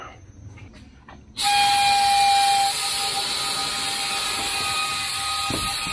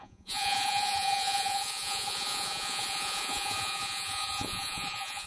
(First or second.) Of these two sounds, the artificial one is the second